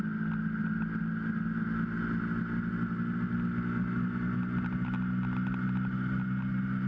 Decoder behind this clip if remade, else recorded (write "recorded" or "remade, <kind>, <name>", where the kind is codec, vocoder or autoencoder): recorded